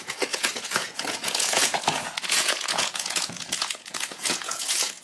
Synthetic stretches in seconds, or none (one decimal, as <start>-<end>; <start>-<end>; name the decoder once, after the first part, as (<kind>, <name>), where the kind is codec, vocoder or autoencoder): 0.0-5.0 (vocoder, Vocos)